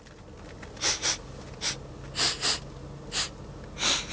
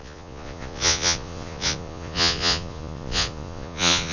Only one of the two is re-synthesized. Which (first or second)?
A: second